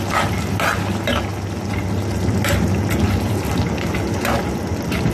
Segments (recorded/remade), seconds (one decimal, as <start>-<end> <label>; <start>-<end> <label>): 0.0-5.1 recorded